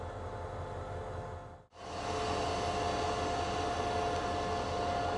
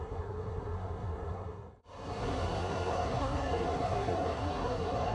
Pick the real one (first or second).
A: first